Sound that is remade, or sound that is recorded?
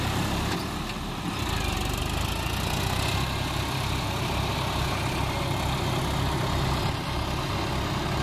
recorded